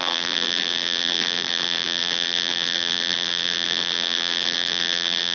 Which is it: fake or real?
fake